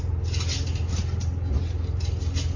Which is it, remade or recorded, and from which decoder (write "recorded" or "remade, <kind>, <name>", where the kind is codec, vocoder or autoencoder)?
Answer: recorded